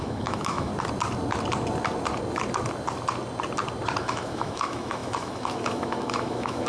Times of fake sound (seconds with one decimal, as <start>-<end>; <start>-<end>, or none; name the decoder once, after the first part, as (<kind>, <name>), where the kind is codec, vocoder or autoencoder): 0.0-0.7 (autoencoder, DAC-VAE); 4.0-6.7